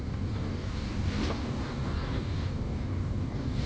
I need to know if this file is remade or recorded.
remade